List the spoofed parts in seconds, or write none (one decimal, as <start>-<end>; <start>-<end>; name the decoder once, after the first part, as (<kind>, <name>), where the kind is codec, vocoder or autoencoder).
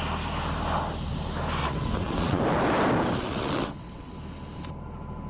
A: 1.6-2.4 (vocoder, WaveNeXt); 3.2-4.1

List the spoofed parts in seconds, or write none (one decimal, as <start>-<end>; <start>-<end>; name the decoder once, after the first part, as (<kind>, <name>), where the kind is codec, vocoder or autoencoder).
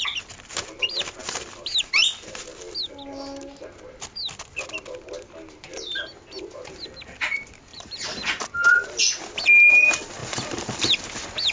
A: 7.7-9.0 (vocoder, BigVGAN v2); 10.2-11.0